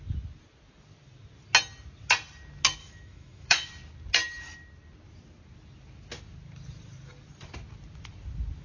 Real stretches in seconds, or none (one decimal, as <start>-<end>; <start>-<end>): 0.0-2.8; 3.7-8.6